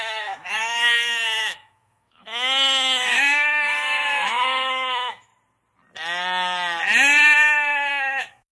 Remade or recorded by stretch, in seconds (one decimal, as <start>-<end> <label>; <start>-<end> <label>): 0.0-5.3 remade; 5.3-7.9 recorded; 7.9-8.5 remade